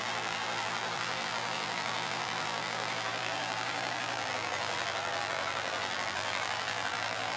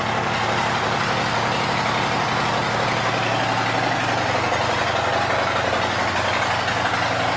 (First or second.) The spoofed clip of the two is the first